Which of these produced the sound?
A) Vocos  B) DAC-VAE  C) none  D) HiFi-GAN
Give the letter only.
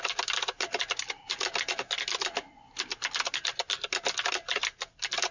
C